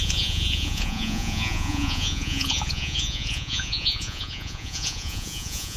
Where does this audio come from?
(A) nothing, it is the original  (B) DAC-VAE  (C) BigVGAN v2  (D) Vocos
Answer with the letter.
D